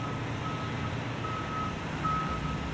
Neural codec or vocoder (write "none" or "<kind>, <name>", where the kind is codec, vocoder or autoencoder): none